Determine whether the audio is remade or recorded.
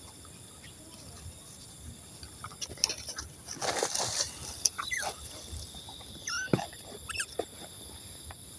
remade